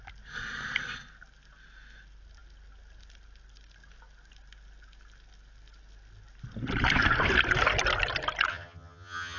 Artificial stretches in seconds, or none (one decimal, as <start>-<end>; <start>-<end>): 8.5-9.4